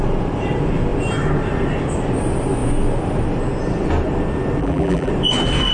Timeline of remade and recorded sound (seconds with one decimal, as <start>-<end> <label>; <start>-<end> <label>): 0.0-4.6 recorded; 4.6-5.1 remade; 5.1-5.7 recorded